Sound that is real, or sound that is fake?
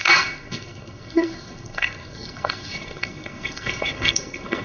fake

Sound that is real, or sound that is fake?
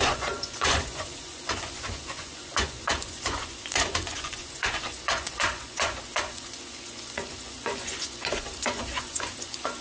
fake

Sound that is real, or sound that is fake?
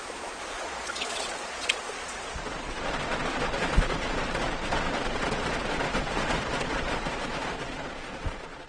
fake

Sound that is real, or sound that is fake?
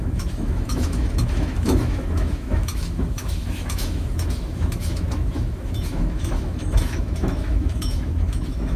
fake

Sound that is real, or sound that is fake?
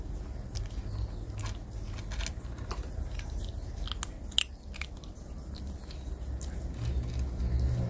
real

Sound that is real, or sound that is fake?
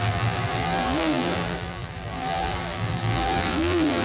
fake